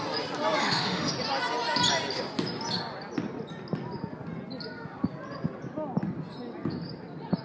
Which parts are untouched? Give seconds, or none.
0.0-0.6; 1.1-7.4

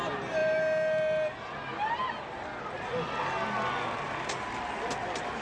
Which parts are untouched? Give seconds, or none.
0.0-5.4

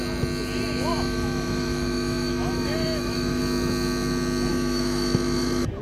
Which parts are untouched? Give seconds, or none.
0.0-0.9; 3.4-4.5